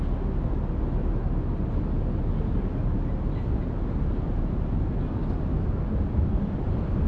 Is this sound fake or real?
real